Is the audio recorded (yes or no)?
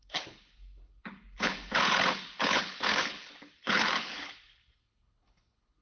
no